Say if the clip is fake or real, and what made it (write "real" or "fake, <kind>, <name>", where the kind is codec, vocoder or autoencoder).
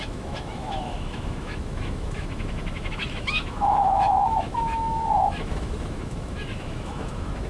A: fake, autoencoder, DAC-VAE